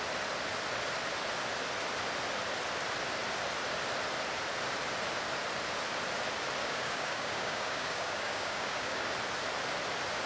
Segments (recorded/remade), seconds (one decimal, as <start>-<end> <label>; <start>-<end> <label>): 0.0-6.6 recorded; 6.6-9.1 remade; 9.1-10.3 recorded